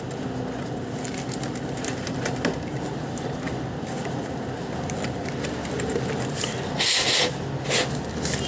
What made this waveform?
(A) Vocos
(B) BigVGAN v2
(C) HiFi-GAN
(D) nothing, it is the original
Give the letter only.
D